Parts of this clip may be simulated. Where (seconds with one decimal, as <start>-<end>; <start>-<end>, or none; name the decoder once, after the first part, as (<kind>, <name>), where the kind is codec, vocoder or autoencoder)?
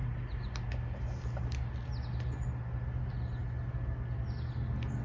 none